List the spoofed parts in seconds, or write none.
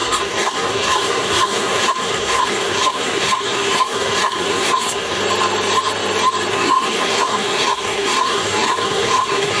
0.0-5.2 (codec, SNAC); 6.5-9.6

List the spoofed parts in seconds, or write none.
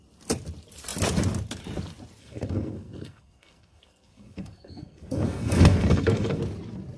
2.2-6.4 (codec, SNAC)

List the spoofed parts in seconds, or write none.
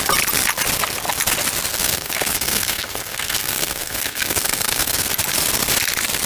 1.7-5.1 (codec, SNAC)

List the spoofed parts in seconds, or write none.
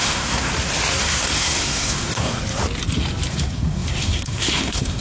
0.0-0.5 (codec, SNAC); 1.0-2.4; 3.3-5.0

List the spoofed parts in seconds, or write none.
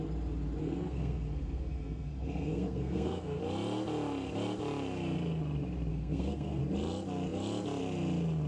0.6-3.4 (codec, SNAC); 5.9-6.6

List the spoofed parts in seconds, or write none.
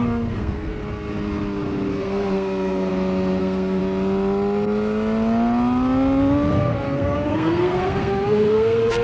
0.0-0.7 (codec, SNAC); 1.9-2.9; 3.4-3.8; 6.5-9.0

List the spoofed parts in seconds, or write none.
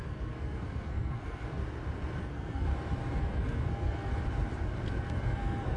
0.0-1.6 (codec, SNAC); 2.2-2.7; 3.2-4.1; 5.0-5.8